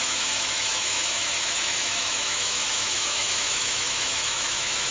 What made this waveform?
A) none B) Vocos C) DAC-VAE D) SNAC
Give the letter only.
C